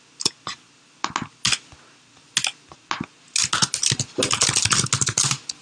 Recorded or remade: recorded